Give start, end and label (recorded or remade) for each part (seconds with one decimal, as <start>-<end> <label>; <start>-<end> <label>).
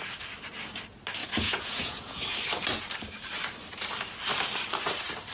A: 0.0-1.2 recorded; 1.2-2.2 remade; 2.2-5.3 recorded